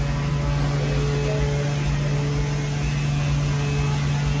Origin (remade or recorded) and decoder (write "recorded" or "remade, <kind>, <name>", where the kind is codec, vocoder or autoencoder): recorded